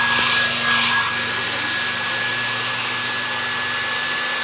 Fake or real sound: real